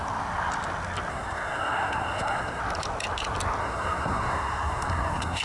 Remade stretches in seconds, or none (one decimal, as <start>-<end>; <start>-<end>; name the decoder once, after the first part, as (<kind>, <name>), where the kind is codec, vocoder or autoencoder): 1.1-2.6 (codec, SNAC); 3.6-5.4